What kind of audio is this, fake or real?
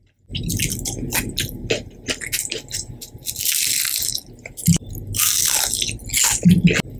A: real